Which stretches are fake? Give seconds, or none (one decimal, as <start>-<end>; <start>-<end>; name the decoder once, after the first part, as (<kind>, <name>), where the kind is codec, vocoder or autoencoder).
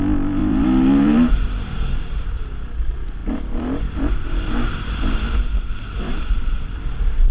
0.4-2.0 (vocoder, BigVGAN v2); 3.2-7.3